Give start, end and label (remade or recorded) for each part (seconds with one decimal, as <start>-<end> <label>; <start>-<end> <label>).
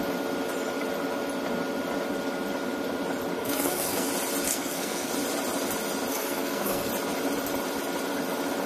0.0-3.4 recorded; 3.4-4.1 remade; 4.1-4.5 recorded; 4.5-5.1 remade; 5.1-6.1 recorded; 6.1-6.9 remade; 6.9-8.7 recorded